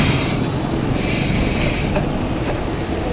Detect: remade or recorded recorded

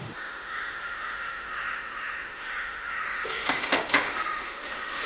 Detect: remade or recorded remade